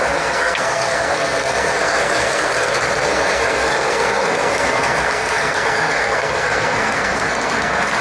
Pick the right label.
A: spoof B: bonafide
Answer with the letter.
A